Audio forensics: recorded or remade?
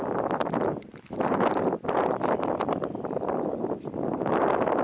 recorded